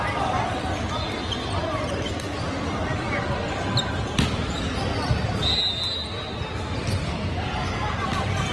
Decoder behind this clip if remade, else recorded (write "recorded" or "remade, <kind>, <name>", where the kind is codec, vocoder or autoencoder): recorded